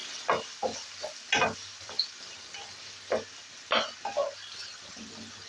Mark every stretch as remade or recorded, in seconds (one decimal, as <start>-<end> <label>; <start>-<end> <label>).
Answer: 0.0-5.5 recorded